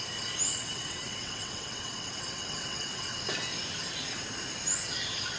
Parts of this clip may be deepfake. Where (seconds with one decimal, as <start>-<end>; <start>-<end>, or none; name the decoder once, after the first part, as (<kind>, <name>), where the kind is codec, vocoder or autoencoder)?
0.5-3.2 (vocoder, WaveNeXt)